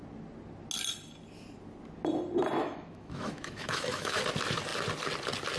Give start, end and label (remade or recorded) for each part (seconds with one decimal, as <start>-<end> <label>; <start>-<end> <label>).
0.0-2.6 recorded; 2.6-4.2 remade; 4.2-5.6 recorded